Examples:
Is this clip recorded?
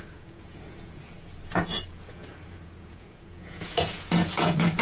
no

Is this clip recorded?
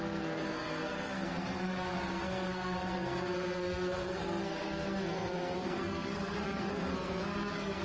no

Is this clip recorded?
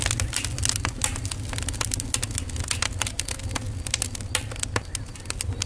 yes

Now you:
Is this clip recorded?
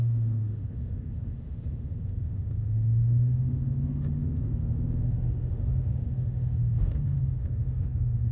no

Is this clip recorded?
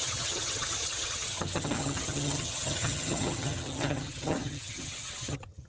no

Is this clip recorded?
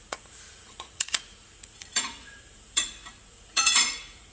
no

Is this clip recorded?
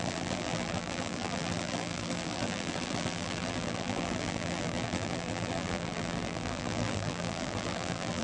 no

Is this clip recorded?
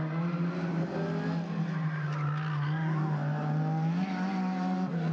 yes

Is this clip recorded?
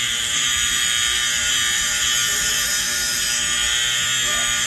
no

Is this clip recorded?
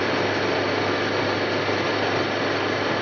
yes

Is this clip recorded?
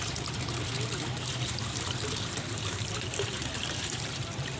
no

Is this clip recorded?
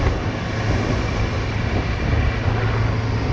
yes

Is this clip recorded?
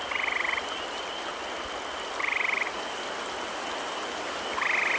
yes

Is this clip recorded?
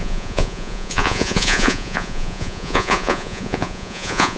no